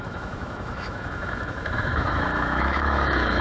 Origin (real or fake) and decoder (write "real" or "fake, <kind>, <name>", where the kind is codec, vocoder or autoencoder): fake, autoencoder, DAC-VAE